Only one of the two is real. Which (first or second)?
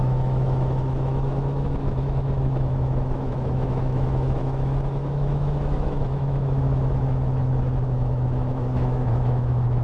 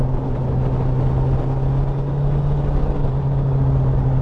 second